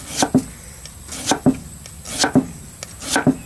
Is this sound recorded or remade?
recorded